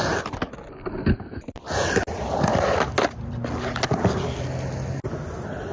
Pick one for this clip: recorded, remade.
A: recorded